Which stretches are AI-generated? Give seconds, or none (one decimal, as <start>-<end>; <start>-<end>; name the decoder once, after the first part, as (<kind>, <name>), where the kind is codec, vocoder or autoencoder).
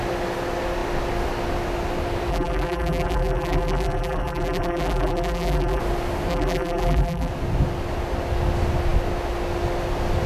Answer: 2.3-5.8 (vocoder, BigVGAN v2); 6.3-7.3